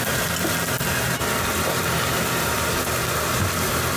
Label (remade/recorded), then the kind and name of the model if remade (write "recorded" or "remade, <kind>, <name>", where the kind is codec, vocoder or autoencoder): recorded